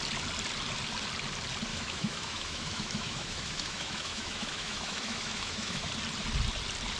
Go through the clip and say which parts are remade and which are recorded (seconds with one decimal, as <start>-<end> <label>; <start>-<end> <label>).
0.0-1.7 recorded; 1.7-5.9 remade; 5.9-7.0 recorded